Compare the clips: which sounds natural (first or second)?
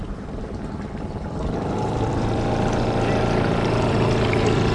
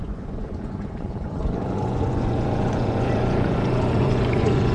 first